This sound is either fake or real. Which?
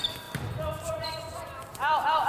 fake